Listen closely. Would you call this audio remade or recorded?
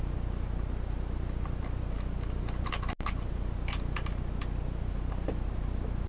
recorded